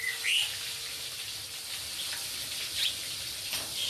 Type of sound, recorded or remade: recorded